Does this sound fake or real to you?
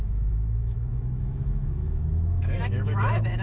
fake